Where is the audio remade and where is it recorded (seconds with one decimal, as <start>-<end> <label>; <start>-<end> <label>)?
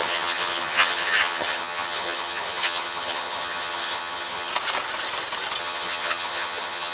0.0-4.5 remade; 4.5-5.6 recorded; 5.6-6.9 remade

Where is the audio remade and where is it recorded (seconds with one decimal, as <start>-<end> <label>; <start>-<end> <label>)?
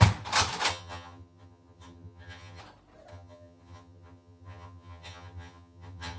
0.0-0.7 recorded; 0.7-2.6 remade; 2.6-3.1 recorded; 3.1-6.2 remade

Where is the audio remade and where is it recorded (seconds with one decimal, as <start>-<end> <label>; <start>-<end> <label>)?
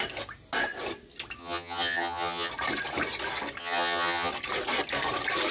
0.0-1.4 recorded; 1.4-2.5 remade; 2.5-3.6 recorded; 3.6-4.3 remade; 4.3-5.5 recorded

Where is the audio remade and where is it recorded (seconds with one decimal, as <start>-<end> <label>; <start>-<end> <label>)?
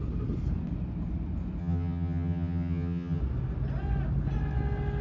0.0-1.6 recorded; 1.6-3.2 remade; 3.2-5.0 recorded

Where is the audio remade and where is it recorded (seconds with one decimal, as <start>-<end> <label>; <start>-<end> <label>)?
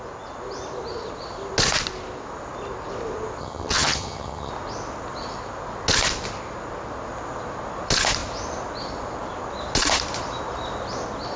0.0-3.4 recorded; 3.4-4.5 remade; 4.5-11.4 recorded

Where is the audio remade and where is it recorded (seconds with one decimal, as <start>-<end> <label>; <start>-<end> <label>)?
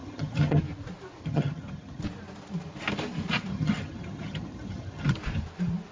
0.0-0.6 remade; 0.6-1.2 recorded; 1.2-2.0 remade; 2.0-3.5 recorded; 3.5-5.1 remade; 5.1-5.9 recorded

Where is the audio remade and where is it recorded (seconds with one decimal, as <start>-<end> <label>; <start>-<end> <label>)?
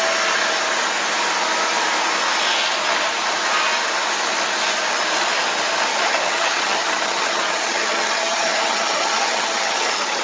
0.0-5.9 recorded; 5.9-10.2 remade